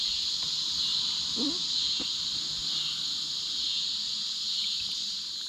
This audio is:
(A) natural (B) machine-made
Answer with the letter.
A